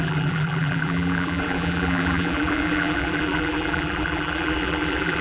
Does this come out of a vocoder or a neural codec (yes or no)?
yes